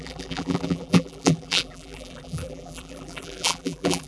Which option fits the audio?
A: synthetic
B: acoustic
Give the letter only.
A